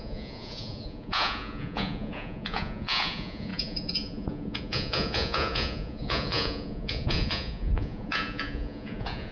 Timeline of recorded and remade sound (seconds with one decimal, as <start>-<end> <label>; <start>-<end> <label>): 0.0-9.3 remade

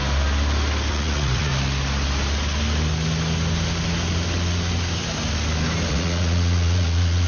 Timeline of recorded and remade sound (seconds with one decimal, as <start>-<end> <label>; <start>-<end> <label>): 0.0-0.9 recorded; 0.9-1.5 remade; 1.5-5.9 recorded; 5.9-7.3 remade